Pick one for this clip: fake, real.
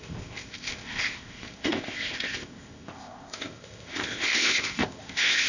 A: fake